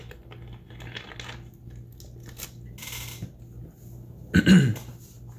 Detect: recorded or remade recorded